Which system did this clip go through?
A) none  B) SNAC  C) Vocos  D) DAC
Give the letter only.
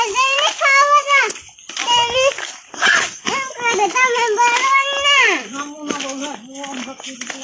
A